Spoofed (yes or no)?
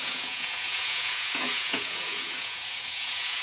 yes